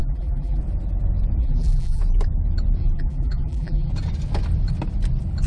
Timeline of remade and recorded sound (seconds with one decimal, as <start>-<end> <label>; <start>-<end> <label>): 0.0-0.6 remade; 0.6-1.4 recorded; 1.4-2.0 remade; 2.0-2.8 recorded; 2.8-3.9 remade; 3.9-5.5 recorded

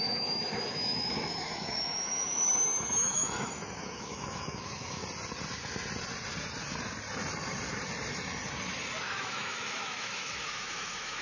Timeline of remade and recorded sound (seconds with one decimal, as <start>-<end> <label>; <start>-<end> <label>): 0.0-5.0 remade; 5.0-9.0 recorded; 9.0-11.2 remade

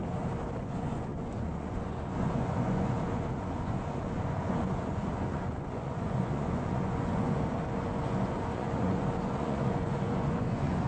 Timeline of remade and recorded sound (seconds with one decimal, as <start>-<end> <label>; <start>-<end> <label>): 0.0-0.6 recorded; 0.6-10.9 remade

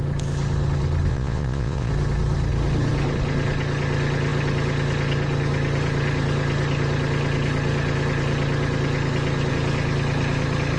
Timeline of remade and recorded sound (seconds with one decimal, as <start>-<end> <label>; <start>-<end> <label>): 0.0-1.1 recorded; 1.1-1.9 remade; 1.9-10.8 recorded

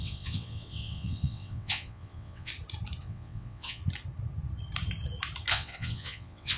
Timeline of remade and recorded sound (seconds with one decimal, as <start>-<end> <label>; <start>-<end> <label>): 0.0-2.5 remade; 2.5-3.0 recorded; 3.0-3.8 remade; 3.8-5.5 recorded; 5.5-6.6 remade

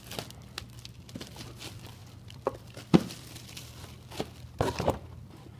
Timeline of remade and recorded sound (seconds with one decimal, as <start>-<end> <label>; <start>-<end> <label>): 0.0-2.0 recorded; 2.0-5.6 remade

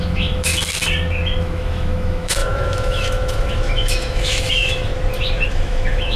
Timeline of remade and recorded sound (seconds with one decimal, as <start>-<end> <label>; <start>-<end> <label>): 0.0-0.5 remade; 0.5-1.4 recorded; 1.4-4.9 remade; 4.9-5.5 recorded; 5.5-6.2 remade

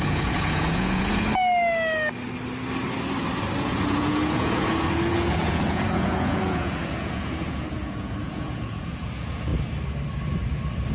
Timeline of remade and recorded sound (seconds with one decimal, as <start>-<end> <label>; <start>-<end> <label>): 0.0-1.3 remade; 1.3-3.6 recorded; 3.6-9.5 remade; 9.5-10.9 recorded